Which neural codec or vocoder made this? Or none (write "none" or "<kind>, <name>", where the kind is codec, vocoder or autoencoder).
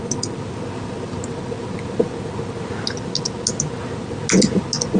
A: none